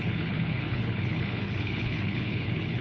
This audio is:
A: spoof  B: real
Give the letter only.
A